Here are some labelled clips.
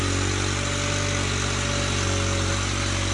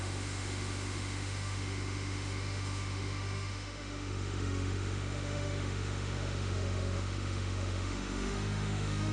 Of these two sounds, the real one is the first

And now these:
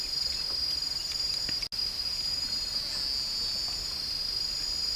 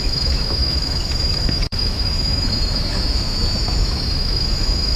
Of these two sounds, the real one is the first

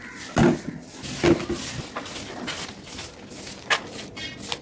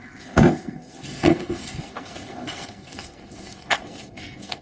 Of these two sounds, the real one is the first